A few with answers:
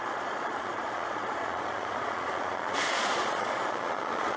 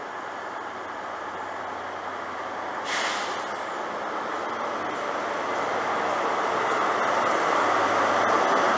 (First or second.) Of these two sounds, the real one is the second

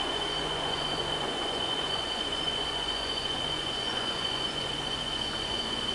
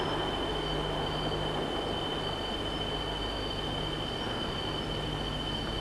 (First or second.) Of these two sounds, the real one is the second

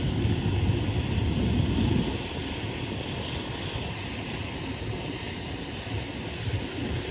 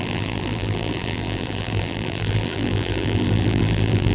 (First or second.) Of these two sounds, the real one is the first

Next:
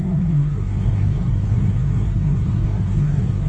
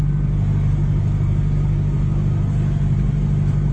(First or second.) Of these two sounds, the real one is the second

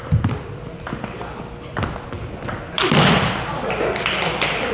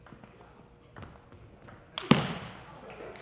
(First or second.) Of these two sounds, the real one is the second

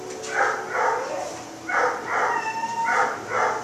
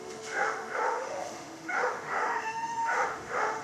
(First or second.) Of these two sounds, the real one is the first